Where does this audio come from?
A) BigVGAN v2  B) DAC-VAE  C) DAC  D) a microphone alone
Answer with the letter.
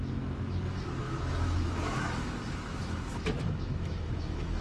B